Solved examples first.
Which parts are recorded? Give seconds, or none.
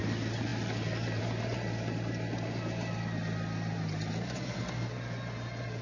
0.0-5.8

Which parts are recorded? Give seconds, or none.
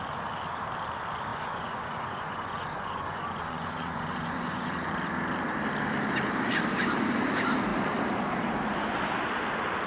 0.0-1.3; 4.9-9.9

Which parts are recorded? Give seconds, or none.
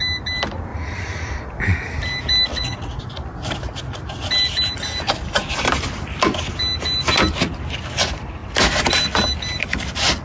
0.0-0.7; 1.5-2.5; 3.0-10.2